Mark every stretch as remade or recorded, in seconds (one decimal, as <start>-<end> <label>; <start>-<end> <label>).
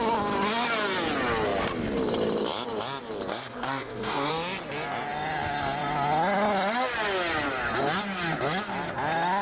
0.0-3.3 recorded; 3.3-4.3 remade; 4.3-9.4 recorded